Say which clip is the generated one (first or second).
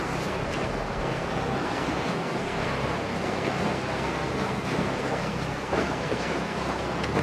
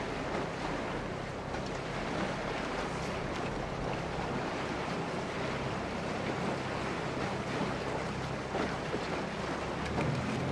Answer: first